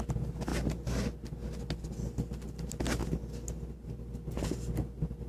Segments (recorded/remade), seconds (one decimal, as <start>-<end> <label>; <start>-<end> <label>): 0.0-5.3 recorded